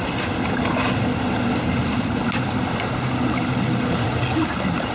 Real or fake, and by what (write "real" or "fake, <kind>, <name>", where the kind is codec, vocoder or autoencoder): real